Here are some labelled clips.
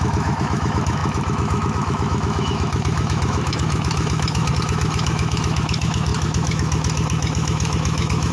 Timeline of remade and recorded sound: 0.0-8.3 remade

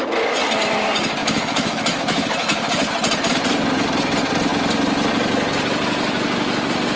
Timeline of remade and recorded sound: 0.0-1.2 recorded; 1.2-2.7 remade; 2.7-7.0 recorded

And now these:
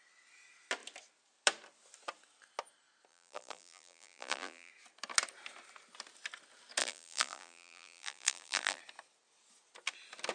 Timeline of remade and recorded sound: 0.0-3.1 recorded; 3.1-4.7 remade; 4.7-6.8 recorded; 6.8-8.8 remade; 8.8-10.3 recorded

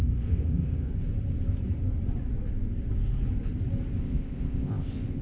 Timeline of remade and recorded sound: 0.0-0.9 remade; 0.9-4.0 recorded; 4.0-5.2 remade

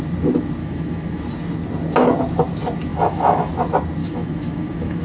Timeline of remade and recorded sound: 0.0-0.6 recorded; 0.6-1.2 remade; 1.2-2.9 recorded; 2.9-3.5 remade; 3.5-4.0 recorded; 4.0-5.0 remade